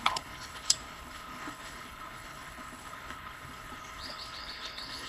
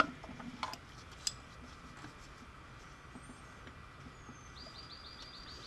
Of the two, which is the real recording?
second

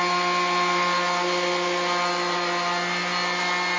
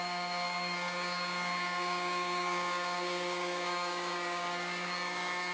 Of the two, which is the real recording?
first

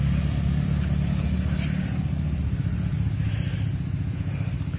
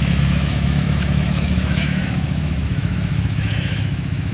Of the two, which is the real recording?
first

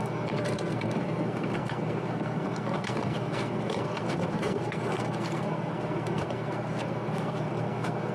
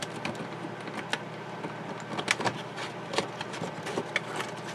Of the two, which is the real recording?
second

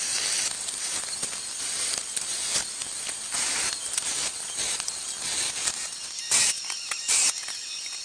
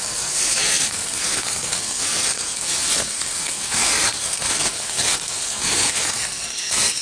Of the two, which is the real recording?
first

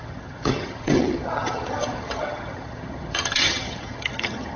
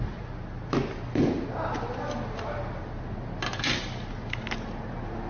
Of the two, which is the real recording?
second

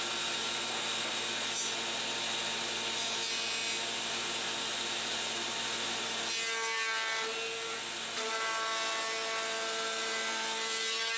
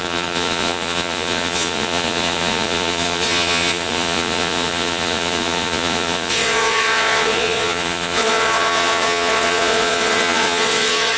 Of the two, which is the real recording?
first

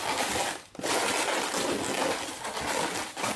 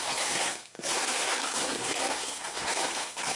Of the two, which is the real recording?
first